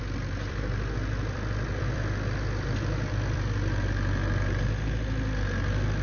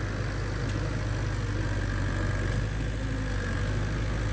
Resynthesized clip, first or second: first